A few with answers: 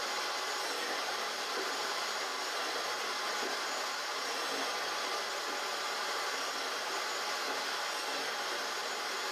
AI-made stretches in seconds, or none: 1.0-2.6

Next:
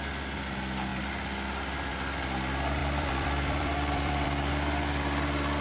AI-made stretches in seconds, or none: 2.8-4.5

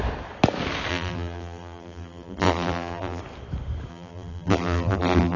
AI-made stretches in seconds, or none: 0.9-3.2; 3.9-5.4

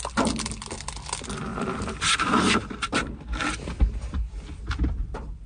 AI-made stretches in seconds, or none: 1.5-4.6

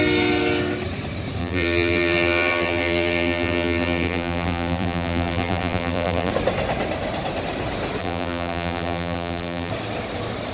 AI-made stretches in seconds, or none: 1.4-6.3; 8.0-9.7

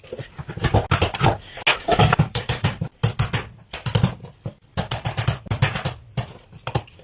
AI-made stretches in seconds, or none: 1.9-2.8; 4.7-5.4